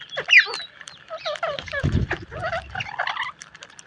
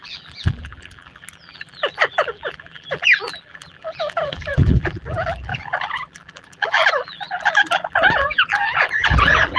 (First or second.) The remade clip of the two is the second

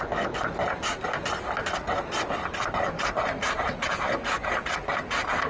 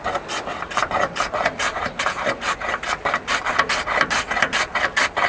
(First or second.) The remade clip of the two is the first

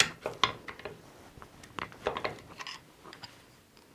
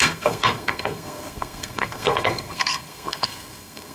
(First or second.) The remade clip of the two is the second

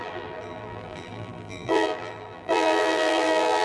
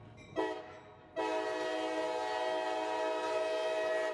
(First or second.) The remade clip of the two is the first